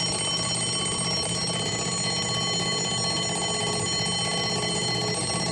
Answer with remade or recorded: recorded